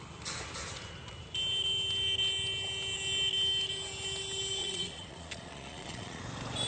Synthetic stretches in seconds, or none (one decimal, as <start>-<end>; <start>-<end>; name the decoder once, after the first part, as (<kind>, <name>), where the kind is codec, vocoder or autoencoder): 4.6-6.2 (vocoder, Vocos)

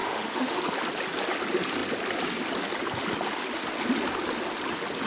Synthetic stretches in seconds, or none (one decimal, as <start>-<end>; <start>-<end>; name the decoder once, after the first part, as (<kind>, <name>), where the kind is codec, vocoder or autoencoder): 0.0-0.6 (autoencoder, DAC-VAE)

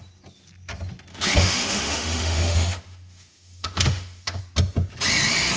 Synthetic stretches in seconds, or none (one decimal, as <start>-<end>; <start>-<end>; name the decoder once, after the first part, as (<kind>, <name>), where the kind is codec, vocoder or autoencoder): 1.1-4.4 (autoencoder, DAC-VAE)

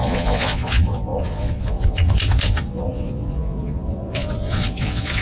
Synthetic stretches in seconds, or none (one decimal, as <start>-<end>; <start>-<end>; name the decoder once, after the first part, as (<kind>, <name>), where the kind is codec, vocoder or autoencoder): 0.0-5.2 (vocoder, Vocos)

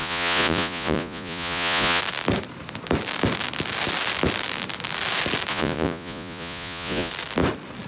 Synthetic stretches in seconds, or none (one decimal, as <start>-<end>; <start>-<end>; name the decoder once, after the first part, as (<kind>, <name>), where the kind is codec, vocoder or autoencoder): 0.0-2.0 (vocoder, Vocos); 5.5-7.1

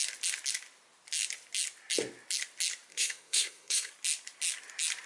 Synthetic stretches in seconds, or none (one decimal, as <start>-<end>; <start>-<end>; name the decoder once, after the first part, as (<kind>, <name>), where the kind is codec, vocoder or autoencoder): 2.9-3.9 (codec, SNAC)

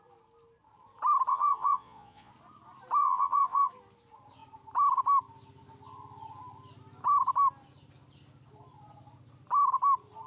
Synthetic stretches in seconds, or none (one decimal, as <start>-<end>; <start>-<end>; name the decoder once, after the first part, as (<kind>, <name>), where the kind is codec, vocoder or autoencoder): 1.3-2.3 (vocoder, Vocos); 3.0-3.7

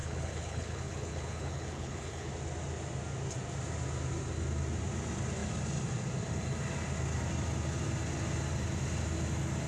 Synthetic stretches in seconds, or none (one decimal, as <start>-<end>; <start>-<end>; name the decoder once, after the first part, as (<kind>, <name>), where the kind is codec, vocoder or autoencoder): 0.0-2.3 (codec, HILCodec)